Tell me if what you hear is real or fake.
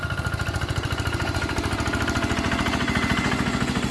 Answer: real